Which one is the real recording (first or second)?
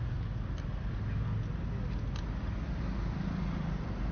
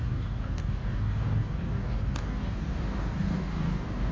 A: first